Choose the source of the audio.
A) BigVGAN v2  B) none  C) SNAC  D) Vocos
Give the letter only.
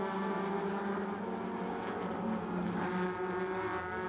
B